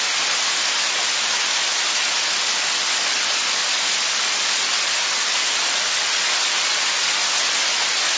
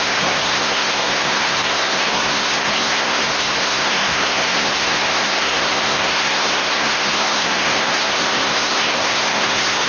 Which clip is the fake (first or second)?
second